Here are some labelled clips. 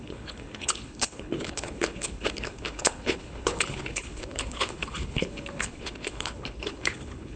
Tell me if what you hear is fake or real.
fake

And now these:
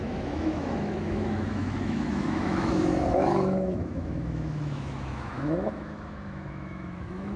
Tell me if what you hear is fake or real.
fake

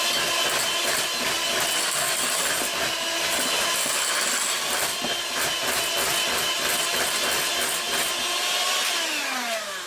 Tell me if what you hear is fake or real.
real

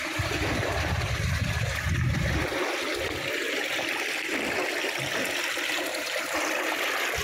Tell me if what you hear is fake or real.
real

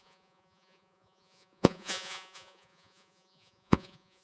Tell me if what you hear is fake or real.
fake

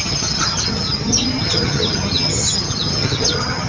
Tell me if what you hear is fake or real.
fake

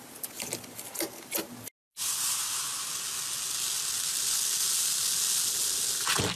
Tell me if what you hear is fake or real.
real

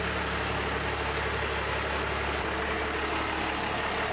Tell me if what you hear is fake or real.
real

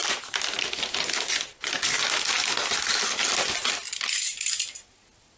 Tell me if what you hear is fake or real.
real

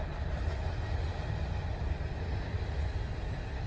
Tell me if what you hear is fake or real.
real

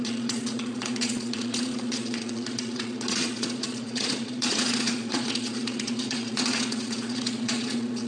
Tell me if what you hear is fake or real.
fake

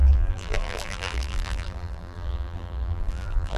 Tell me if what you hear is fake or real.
fake